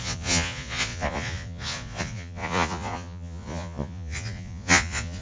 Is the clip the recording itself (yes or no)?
no